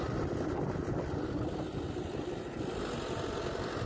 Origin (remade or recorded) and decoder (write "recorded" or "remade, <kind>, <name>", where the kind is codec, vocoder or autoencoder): recorded